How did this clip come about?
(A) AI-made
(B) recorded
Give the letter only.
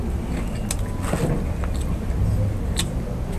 B